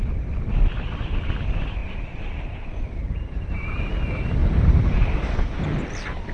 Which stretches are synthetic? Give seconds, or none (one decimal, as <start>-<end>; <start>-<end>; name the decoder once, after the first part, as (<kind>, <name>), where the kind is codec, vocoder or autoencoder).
1.8-3.9 (vocoder, BigVGAN v2); 4.4-5.6